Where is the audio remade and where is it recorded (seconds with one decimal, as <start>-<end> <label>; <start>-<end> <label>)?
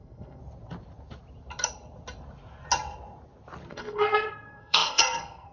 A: 0.0-0.4 remade; 0.4-3.7 recorded; 3.7-5.5 remade